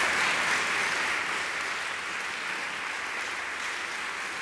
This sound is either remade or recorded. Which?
recorded